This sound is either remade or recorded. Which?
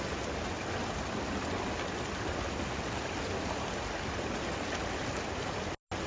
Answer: recorded